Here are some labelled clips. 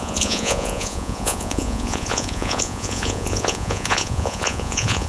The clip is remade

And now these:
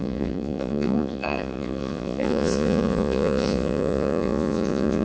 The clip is remade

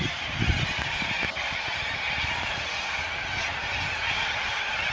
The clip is recorded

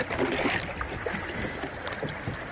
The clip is recorded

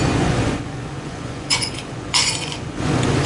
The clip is remade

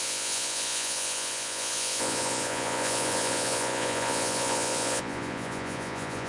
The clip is remade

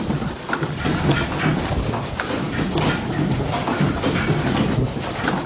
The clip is recorded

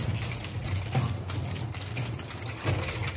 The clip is recorded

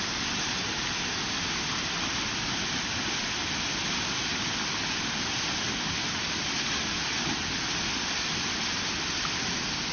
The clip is recorded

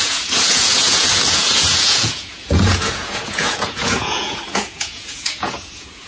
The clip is remade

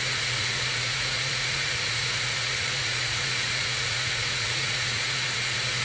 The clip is remade